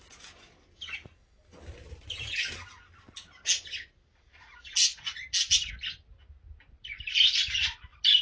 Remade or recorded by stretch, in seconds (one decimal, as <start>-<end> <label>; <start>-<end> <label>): 0.0-8.2 recorded